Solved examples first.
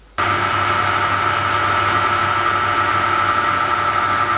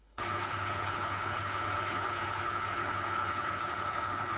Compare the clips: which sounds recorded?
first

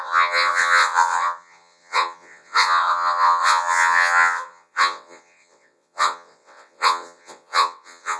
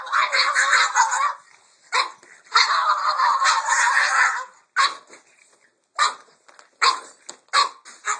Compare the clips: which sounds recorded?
second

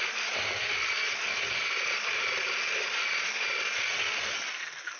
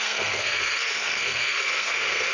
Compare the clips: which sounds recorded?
first